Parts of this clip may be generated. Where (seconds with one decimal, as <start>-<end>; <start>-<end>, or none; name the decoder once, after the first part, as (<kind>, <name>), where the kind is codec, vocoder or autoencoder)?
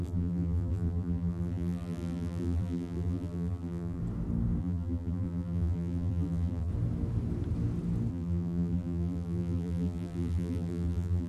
0.0-4.0 (vocoder, BigVGAN v2); 4.6-6.7; 8.1-11.3